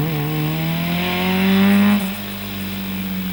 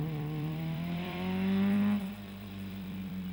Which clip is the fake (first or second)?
second